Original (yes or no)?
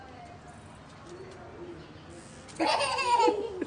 yes